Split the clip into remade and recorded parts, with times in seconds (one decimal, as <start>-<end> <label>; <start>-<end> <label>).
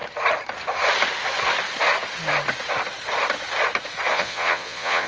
0.0-4.1 recorded; 4.1-5.1 remade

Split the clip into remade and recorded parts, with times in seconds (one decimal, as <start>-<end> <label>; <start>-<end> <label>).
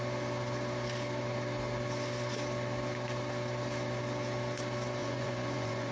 0.0-5.0 recorded; 5.0-5.9 remade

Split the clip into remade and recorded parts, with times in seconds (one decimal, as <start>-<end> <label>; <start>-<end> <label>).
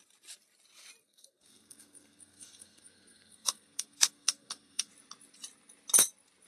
0.0-1.0 recorded; 1.0-4.9 remade; 4.9-6.5 recorded